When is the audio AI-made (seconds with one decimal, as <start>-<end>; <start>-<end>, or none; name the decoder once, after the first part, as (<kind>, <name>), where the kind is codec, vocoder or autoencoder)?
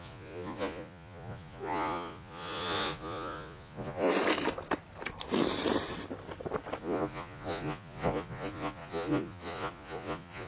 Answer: 0.0-4.1 (vocoder, Vocos); 6.8-10.5